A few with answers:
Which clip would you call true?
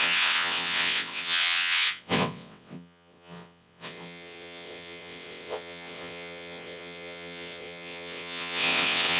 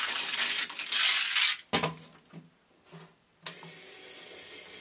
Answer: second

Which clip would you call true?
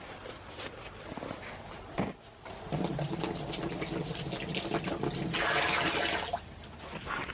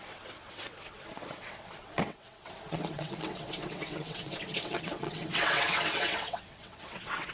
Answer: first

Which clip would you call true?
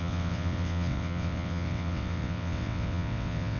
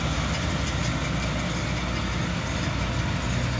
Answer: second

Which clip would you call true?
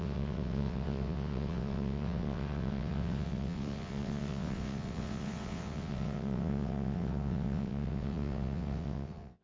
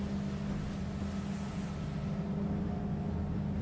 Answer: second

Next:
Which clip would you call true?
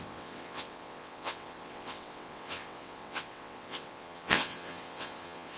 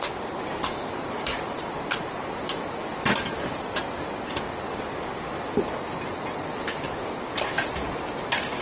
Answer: second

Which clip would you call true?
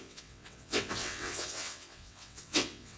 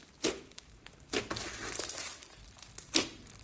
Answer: second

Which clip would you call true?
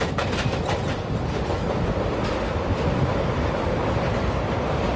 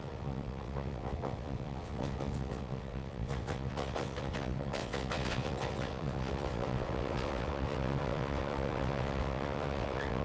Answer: first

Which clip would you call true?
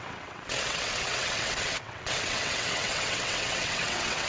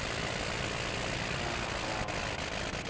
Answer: second